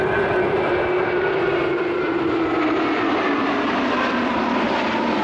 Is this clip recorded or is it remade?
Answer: recorded